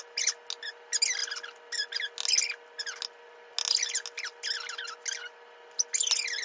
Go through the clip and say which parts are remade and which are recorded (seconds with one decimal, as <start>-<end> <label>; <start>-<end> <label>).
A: 0.0-6.4 recorded